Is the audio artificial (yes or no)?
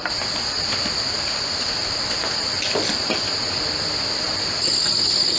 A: no